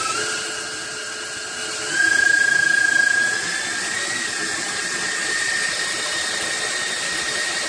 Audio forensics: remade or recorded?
recorded